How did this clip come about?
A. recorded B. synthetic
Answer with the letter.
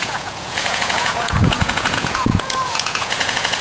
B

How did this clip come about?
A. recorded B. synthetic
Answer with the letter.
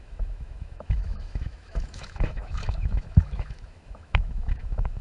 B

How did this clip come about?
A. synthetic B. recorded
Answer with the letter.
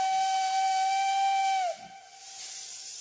B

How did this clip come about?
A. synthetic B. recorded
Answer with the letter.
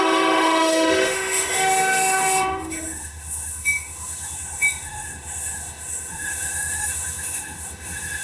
A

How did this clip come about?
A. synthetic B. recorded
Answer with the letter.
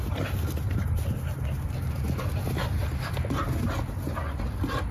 B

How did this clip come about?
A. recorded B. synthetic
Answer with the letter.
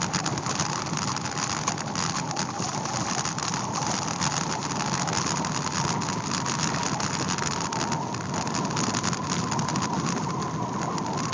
A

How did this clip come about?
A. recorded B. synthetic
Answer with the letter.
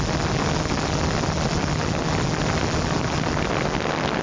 A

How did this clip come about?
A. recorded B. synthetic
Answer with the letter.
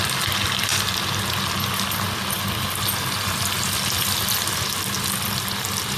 A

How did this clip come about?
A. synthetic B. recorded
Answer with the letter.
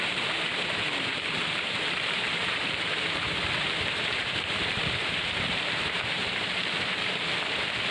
A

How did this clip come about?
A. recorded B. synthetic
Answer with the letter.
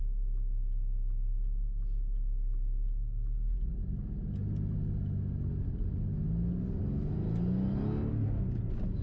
A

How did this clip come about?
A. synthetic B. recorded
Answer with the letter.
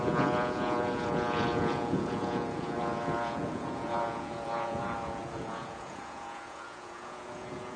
A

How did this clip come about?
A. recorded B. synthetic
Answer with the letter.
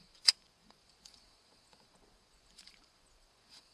B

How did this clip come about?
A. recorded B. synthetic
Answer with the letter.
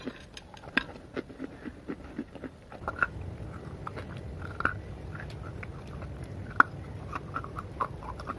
B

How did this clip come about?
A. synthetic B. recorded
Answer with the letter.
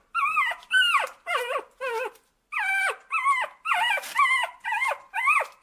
B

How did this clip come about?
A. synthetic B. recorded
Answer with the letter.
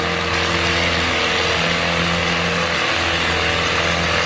B